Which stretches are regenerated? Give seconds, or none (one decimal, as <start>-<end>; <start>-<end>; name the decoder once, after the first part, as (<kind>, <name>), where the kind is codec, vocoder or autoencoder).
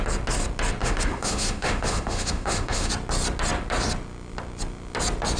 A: 0.8-2.9 (autoencoder, DAC-VAE)